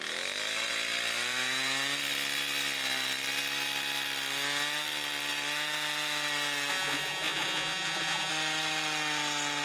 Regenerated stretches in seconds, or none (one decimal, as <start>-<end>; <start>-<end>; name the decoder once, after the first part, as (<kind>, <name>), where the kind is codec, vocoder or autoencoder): 6.7-8.3 (vocoder, Vocos)